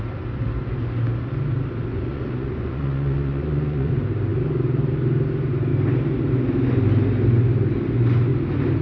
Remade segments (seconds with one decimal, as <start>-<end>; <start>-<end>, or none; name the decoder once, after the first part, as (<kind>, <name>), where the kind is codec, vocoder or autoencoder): 1.9-3.9 (vocoder, Vocos)